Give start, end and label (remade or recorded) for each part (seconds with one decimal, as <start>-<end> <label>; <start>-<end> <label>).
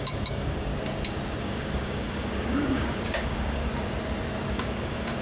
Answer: 0.0-0.7 remade; 0.7-1.4 recorded; 1.4-3.7 remade; 3.7-4.5 recorded; 4.5-5.2 remade